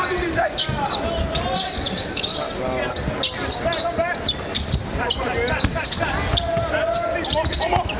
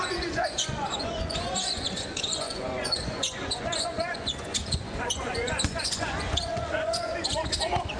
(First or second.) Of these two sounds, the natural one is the first